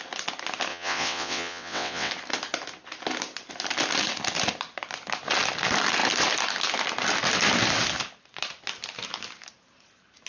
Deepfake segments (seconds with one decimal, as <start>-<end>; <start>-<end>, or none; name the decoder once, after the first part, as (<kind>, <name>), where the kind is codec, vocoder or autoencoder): 0.7-2.1 (vocoder, WaveNeXt)